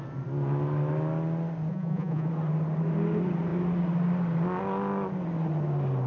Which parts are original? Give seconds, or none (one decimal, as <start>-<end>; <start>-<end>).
0.0-1.7; 2.3-6.1